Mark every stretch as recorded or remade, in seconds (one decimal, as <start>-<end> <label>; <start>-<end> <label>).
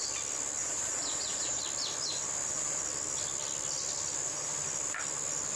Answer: 0.0-0.6 recorded; 0.6-1.6 remade; 1.6-5.6 recorded